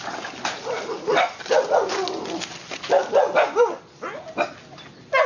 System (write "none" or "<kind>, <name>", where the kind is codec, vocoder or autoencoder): none